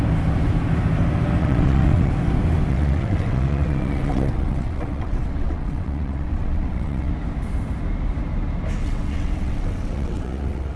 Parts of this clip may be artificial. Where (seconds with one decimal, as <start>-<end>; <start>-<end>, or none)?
1.4-2.1; 2.7-7.1; 8.8-10.8